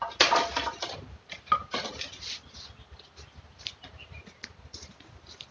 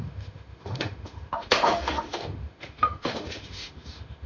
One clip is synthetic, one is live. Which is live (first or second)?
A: first